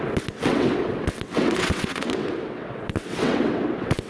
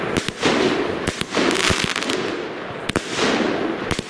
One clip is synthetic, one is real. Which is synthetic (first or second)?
first